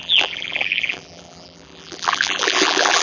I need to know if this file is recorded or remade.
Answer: remade